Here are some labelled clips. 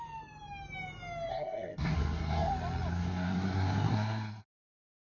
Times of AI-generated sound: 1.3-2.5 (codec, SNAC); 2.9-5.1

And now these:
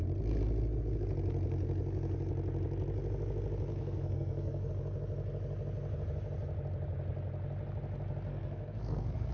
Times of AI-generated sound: 3.7-4.7 (codec, SNAC); 8.3-9.3

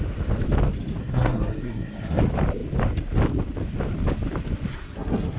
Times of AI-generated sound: 1.0-2.2 (codec, SNAC); 4.7-5.4